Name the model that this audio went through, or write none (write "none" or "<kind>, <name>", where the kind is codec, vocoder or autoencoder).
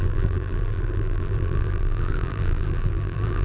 vocoder, BigVGAN v2